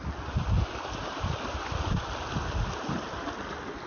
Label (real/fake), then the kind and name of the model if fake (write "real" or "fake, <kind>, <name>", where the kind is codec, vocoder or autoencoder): real